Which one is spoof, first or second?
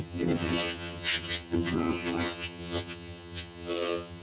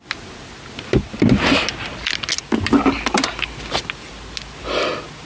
first